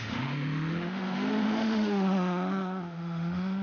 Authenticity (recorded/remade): remade